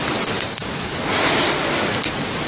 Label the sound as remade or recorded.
recorded